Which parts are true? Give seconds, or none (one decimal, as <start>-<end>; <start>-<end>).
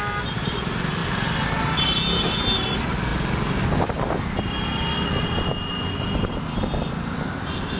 0.0-7.8